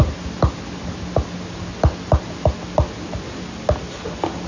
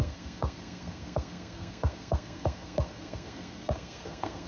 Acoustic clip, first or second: first